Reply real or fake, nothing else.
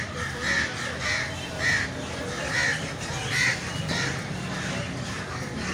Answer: real